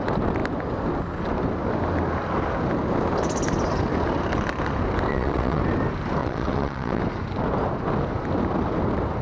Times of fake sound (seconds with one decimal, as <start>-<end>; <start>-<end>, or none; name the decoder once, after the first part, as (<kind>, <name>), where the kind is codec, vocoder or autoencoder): 5.1-5.6 (vocoder, WaveNeXt); 6.2-7.0